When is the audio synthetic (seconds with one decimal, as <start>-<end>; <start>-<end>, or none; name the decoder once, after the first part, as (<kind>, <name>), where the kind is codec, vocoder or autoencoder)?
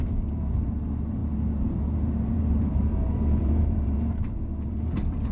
0.0-5.3 (vocoder, BigVGAN v2)